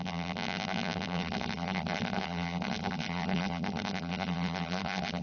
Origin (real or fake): fake